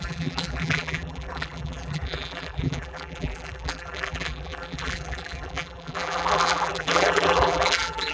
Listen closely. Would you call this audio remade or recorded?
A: remade